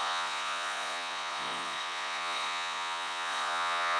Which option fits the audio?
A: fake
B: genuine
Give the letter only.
A